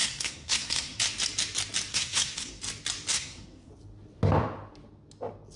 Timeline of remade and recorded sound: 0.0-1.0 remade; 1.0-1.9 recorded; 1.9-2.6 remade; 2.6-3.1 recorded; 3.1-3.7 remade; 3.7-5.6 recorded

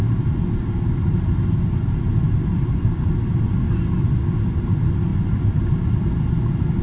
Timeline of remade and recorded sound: 0.0-6.8 recorded

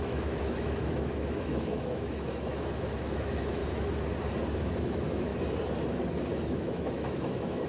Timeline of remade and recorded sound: 0.0-3.6 remade; 3.6-4.6 recorded; 4.6-5.3 remade; 5.3-6.3 recorded; 6.3-7.7 remade

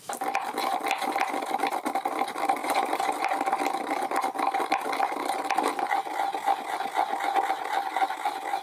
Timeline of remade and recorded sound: 0.0-2.6 recorded; 2.6-3.3 remade; 3.3-8.6 recorded

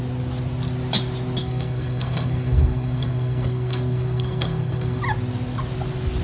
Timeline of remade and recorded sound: 0.0-1.4 recorded; 1.4-5.0 remade; 5.0-6.2 recorded

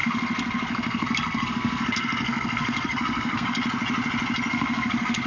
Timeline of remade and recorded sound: 0.0-3.6 remade; 3.6-4.5 recorded; 4.5-5.3 remade

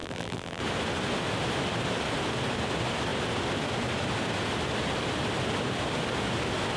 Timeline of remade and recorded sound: 0.0-0.6 remade; 0.6-6.8 recorded